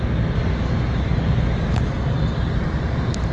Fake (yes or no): no